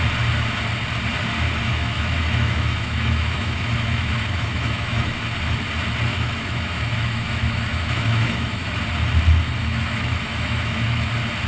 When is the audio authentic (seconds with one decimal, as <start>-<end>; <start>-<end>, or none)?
0.0-1.7; 5.2-6.1; 8.8-9.6; 11.1-11.5